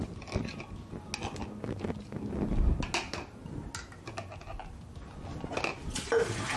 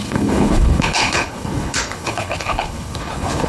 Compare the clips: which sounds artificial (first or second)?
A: second